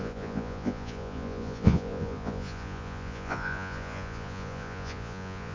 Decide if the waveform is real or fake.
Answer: fake